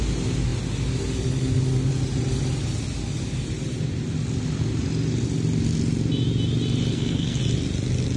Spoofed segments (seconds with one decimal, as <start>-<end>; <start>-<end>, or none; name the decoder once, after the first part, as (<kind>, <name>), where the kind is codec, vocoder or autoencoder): 6.9-7.4 (codec, SNAC)